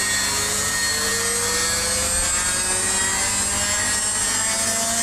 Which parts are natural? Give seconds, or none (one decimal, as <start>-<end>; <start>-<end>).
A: 0.0-5.0